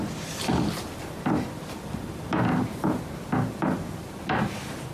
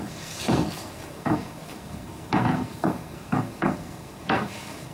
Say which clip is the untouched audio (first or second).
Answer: first